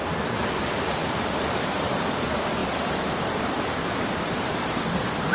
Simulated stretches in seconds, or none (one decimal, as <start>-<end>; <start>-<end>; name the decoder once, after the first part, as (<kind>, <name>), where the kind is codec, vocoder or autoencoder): none